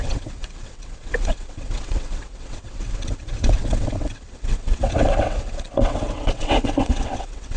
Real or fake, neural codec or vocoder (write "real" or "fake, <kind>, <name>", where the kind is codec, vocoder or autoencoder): fake, vocoder, WaveNeXt